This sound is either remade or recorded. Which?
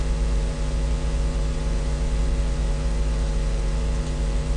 remade